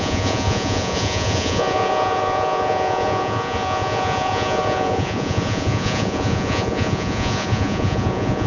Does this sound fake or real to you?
fake